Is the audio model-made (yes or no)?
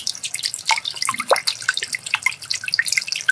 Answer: no